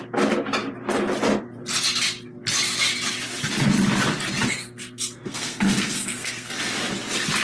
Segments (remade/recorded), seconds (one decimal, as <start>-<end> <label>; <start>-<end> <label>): 0.0-4.5 recorded; 4.5-6.5 remade; 6.5-7.4 recorded